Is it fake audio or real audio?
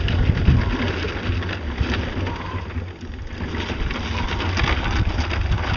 real